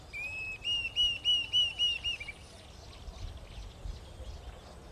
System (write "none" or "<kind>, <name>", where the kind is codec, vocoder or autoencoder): none